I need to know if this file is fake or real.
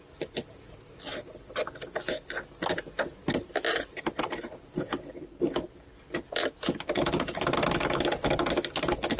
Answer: real